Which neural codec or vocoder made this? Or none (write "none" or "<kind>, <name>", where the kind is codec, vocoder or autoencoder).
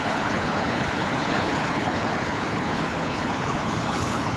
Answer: codec, HILCodec